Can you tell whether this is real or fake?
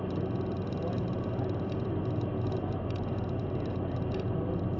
real